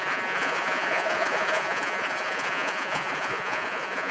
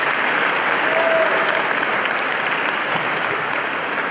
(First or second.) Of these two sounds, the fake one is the first